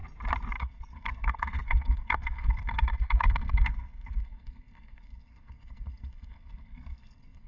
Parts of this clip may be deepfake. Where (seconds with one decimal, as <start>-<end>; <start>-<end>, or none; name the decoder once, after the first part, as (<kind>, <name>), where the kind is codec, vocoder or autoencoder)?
0.6-7.5 (codec, SNAC)